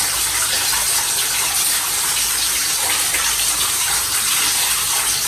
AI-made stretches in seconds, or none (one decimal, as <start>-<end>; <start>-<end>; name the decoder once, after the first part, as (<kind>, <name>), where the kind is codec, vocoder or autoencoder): none